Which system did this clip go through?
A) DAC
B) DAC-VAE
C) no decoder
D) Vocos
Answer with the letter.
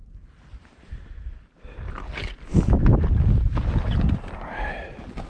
C